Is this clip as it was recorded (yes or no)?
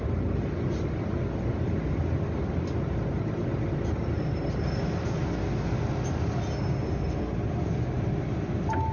yes